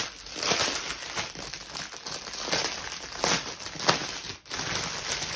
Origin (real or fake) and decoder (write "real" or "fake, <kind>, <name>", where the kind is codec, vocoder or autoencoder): real